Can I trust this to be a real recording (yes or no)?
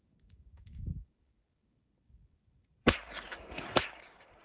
no